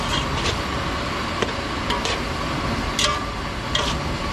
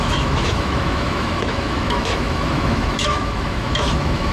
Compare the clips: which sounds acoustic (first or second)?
first